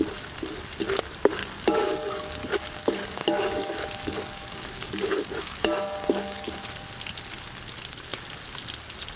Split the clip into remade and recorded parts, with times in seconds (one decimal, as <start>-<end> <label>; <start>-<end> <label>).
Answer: 0.0-1.4 recorded; 1.4-6.6 remade; 6.6-9.2 recorded

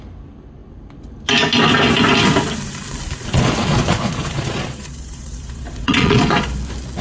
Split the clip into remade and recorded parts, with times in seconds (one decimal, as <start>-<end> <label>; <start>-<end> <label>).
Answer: 0.0-3.2 recorded; 3.2-6.4 remade; 6.4-7.0 recorded

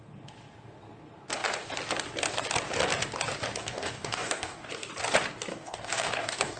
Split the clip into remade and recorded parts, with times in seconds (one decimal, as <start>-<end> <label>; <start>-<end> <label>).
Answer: 0.0-3.6 recorded; 3.6-4.7 remade; 4.7-5.5 recorded; 5.5-6.6 remade

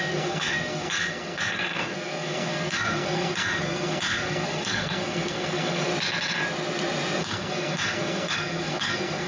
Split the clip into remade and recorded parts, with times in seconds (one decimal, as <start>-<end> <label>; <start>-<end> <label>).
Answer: 0.0-5.9 remade; 5.9-7.2 recorded; 7.2-9.3 remade

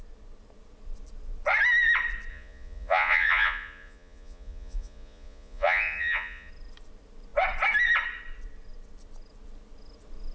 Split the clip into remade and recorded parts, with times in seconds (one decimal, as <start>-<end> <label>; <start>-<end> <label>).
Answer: 0.0-2.3 recorded; 2.3-6.5 remade; 6.5-10.3 recorded

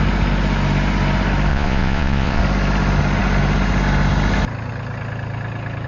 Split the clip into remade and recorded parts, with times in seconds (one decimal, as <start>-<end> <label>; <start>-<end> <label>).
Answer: 0.0-1.5 recorded; 1.5-2.4 remade; 2.4-5.9 recorded